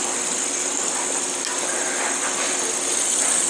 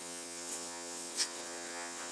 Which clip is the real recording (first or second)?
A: first